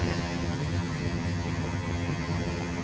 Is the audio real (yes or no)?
no